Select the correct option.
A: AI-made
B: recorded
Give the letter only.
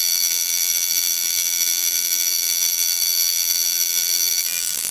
A